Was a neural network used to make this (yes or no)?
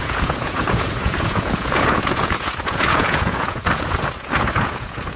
yes